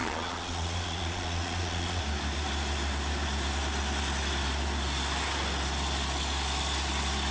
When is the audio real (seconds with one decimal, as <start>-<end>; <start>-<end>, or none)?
2.0-7.3